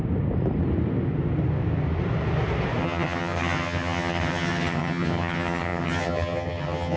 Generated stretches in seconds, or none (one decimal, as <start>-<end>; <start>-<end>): 2.8-7.0